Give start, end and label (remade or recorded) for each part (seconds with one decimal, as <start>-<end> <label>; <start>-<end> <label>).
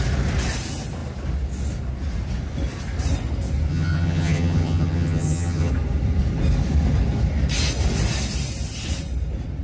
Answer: 0.0-3.7 recorded; 3.7-5.7 remade; 5.7-9.6 recorded